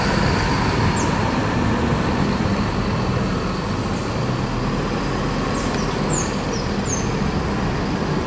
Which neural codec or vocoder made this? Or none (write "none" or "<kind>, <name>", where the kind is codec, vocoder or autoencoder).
none